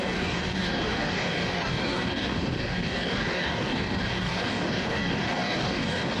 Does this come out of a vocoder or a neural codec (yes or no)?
yes